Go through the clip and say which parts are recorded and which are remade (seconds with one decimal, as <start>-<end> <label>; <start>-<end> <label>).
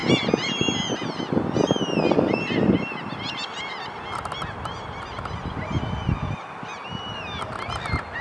0.0-8.2 recorded